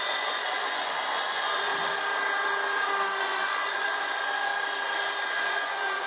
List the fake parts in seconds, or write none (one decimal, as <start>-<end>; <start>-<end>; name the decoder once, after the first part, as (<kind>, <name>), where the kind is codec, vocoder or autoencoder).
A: 0.0-1.7 (vocoder, Vocos); 3.2-4.5; 5.3-6.1